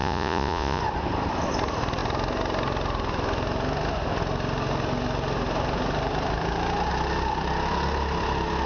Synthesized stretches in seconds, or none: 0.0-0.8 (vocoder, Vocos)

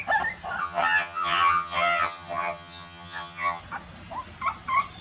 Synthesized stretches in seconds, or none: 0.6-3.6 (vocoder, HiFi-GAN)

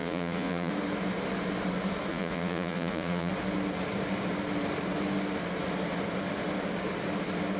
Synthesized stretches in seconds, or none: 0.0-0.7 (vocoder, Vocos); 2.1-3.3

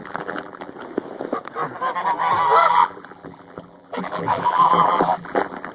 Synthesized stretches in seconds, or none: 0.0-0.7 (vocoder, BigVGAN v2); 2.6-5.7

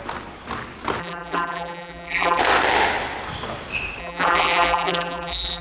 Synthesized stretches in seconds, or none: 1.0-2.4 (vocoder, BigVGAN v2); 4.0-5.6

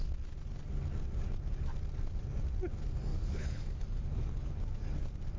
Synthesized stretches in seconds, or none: 3.1-4.6 (codec, HILCodec)

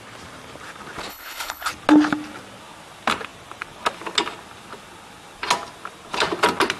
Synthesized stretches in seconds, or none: 1.1-1.7 (codec, HILCodec)

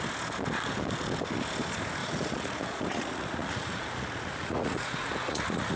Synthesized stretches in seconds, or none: 2.0-5.8 (vocoder, Vocos)